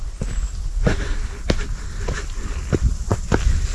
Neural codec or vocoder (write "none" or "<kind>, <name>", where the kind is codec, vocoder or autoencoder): none